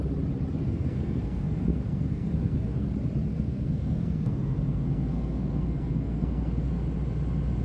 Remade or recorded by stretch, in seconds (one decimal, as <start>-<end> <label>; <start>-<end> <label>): 0.0-0.6 recorded; 0.6-2.9 remade; 2.9-3.3 recorded; 3.3-6.7 remade; 6.7-7.6 recorded